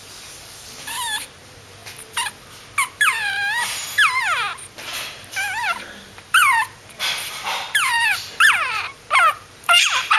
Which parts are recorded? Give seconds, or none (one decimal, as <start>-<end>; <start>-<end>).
1.8-2.9; 4.2-5.6